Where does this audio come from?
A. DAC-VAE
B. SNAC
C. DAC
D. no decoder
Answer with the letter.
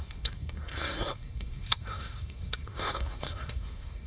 B